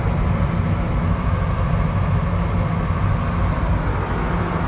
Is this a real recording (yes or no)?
no